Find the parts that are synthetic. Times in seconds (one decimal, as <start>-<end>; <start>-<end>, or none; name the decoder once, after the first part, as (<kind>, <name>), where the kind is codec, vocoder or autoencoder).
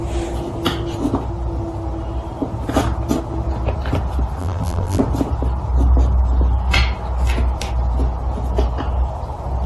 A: 4.4-5.0 (vocoder, BigVGAN v2)